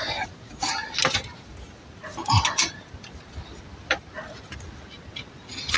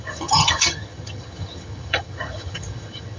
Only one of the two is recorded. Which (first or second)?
first